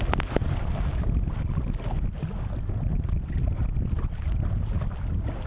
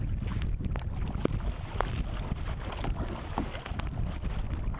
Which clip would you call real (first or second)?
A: first